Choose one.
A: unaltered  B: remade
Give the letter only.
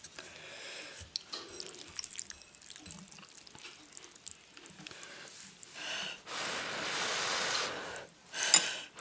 A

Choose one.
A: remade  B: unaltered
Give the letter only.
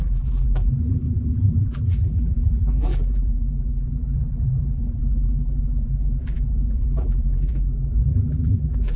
A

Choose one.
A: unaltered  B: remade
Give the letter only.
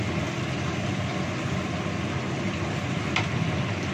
A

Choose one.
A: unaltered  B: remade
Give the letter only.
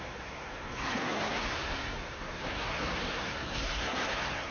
B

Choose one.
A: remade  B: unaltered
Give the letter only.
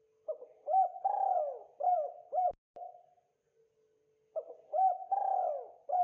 B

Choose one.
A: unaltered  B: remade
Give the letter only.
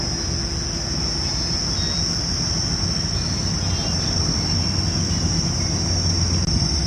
A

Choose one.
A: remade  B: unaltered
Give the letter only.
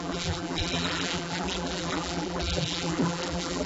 A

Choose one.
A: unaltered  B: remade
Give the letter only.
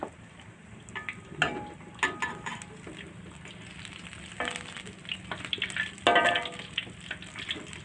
A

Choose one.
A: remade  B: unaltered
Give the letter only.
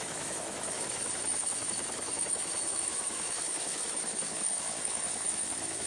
A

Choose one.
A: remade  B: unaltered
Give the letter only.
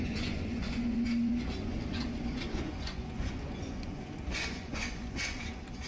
A